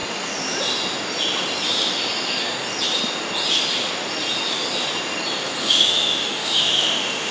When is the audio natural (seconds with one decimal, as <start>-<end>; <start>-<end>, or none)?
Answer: 0.0-5.6